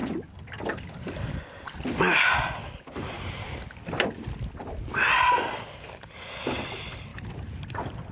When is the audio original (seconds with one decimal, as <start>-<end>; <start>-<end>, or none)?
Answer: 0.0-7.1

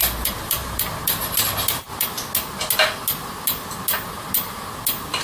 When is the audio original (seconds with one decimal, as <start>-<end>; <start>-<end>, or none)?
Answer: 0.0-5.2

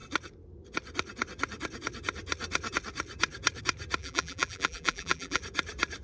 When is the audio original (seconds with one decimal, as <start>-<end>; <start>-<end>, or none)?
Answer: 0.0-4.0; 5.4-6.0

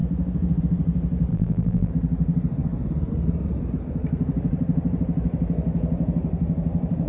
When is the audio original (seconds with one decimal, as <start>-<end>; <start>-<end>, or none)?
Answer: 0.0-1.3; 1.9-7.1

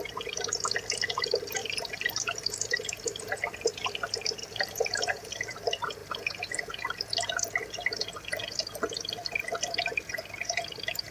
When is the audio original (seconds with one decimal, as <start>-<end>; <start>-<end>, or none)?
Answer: 0.0-1.6; 3.9-4.4; 5.3-11.1

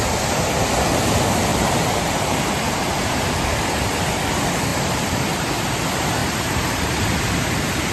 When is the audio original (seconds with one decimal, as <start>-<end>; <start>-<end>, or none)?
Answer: 0.0-1.5; 4.3-4.7; 5.6-6.2; 7.2-7.9

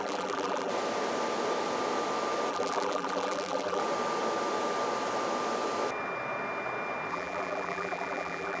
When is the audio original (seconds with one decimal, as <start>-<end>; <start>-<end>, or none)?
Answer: 0.7-2.5; 3.8-7.1

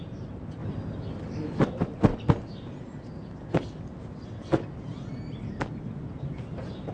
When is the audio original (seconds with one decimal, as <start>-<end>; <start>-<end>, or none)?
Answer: 0.6-1.6; 2.1-6.2